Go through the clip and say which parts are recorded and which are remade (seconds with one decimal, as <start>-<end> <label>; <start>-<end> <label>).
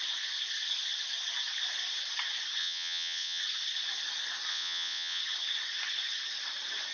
0.0-2.6 recorded; 2.6-3.4 remade; 3.4-4.5 recorded; 4.5-5.2 remade; 5.2-6.9 recorded